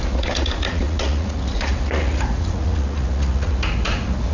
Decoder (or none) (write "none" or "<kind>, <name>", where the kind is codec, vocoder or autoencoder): vocoder, Vocos